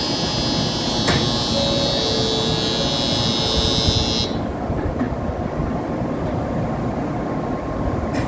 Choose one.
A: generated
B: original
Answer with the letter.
B